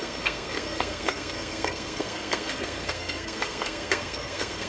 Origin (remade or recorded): remade